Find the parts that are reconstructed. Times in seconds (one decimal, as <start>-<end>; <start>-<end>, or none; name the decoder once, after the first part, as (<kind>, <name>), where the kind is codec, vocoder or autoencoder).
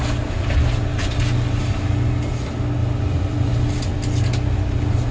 0.9-1.7 (vocoder, BigVGAN v2); 2.8-3.7